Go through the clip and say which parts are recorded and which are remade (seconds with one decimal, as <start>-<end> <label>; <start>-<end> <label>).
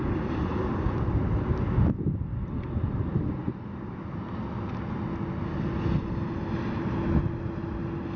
0.0-8.2 recorded